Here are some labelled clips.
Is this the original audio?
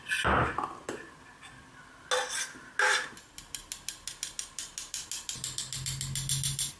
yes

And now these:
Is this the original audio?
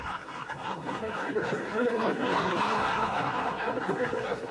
no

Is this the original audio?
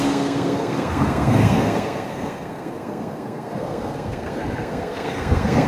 no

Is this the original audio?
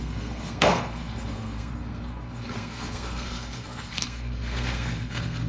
no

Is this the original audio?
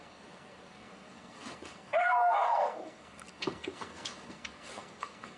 no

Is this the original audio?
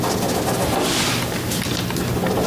yes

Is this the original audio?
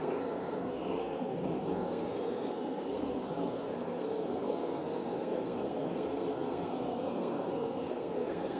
no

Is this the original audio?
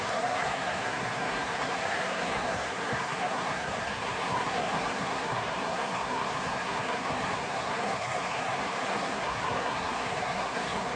no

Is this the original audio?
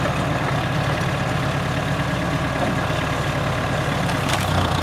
yes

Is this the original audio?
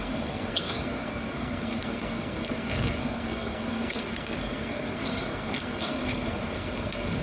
no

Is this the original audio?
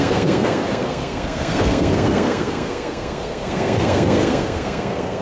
no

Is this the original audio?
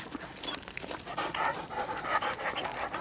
yes